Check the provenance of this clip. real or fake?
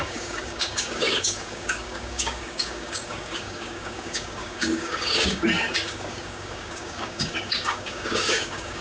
fake